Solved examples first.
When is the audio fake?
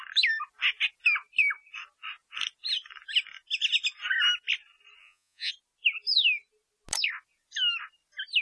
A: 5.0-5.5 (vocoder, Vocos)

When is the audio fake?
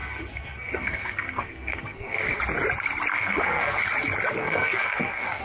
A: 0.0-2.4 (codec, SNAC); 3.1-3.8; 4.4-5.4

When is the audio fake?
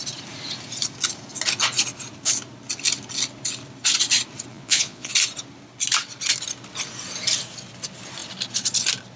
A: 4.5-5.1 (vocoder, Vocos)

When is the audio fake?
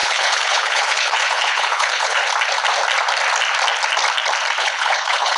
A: 0.0-2.2 (codec, HILCodec); 4.6-5.4